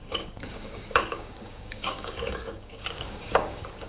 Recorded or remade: remade